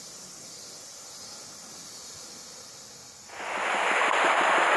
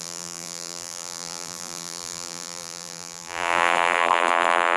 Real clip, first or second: first